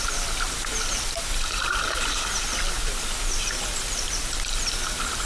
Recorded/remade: recorded